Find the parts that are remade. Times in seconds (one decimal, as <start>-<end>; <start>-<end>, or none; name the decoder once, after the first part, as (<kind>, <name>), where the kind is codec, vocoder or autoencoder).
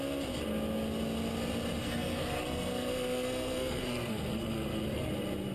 1.8-5.1 (codec, SNAC)